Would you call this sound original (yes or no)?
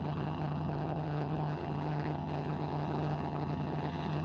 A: no